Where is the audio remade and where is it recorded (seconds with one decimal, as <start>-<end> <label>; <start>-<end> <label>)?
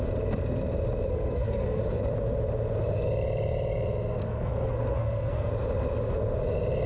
0.0-1.1 recorded; 1.1-1.8 remade; 1.8-4.2 recorded; 4.2-5.5 remade; 5.5-6.9 recorded